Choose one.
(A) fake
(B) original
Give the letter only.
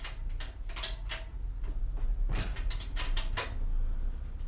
B